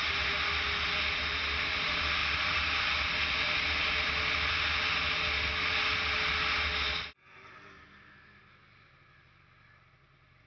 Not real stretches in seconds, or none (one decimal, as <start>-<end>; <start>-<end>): none